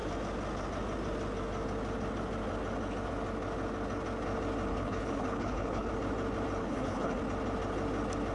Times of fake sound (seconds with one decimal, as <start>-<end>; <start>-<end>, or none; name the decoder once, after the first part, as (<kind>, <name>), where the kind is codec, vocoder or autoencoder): 4.7-5.9 (codec, HILCodec); 6.6-7.2